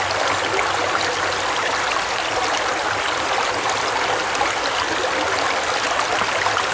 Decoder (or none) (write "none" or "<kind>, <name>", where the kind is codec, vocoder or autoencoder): none